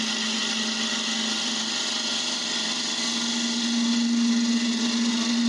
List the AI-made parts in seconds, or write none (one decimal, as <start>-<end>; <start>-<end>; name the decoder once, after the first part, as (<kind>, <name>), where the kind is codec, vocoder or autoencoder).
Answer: none